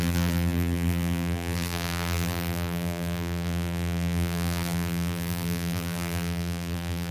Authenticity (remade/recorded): remade